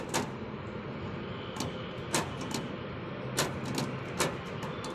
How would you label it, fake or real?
real